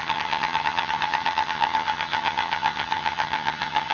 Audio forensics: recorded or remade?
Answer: remade